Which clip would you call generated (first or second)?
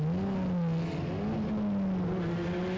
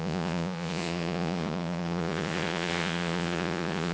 second